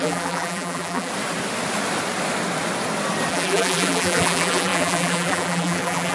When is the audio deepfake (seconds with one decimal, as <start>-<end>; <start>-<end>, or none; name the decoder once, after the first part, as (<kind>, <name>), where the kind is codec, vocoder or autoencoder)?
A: 0.0-1.1 (vocoder, BigVGAN v2); 3.3-6.1